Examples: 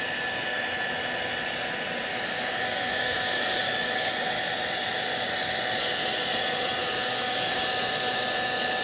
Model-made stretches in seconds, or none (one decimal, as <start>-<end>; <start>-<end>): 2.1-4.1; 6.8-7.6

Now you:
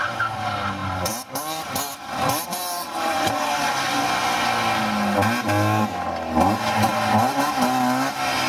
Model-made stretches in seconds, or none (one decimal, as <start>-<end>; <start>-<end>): 0.8-3.7

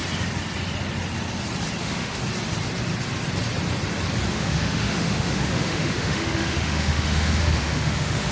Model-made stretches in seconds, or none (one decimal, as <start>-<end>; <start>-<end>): 1.8-2.2; 4.3-8.3

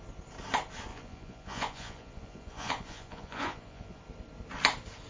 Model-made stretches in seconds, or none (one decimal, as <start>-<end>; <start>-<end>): 0.9-4.0

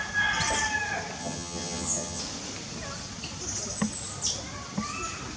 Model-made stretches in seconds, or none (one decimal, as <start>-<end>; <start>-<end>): 1.2-2.2